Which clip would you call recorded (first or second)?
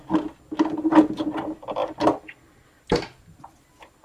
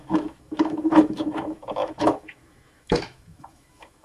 first